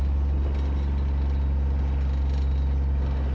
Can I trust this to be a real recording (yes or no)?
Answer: yes